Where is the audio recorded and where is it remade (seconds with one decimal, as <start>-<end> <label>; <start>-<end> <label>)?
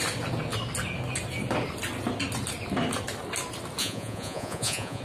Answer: 0.0-3.8 recorded; 3.8-5.0 remade